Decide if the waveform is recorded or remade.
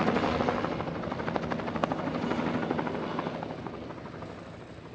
recorded